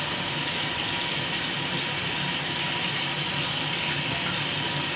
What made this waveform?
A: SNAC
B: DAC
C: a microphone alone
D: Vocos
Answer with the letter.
C